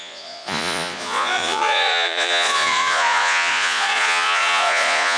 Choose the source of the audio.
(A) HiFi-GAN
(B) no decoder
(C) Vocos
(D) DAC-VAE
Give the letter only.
C